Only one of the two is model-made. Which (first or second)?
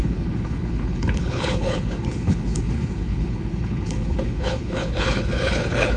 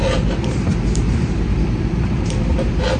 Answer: first